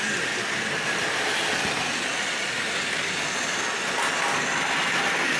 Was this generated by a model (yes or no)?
no